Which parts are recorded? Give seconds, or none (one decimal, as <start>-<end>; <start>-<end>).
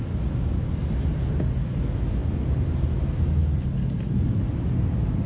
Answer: 0.0-5.3